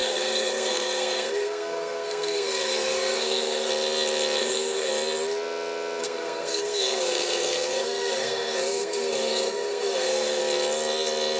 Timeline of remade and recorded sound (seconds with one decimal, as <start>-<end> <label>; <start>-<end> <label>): 0.0-3.7 remade; 3.7-4.4 recorded; 4.4-4.9 remade; 4.9-6.0 recorded; 6.0-10.4 remade; 10.4-11.4 recorded